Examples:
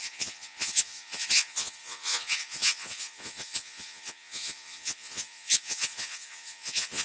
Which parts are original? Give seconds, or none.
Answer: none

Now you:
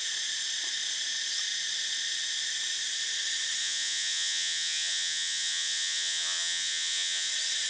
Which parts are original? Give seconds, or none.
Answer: 0.0-3.6; 7.3-7.7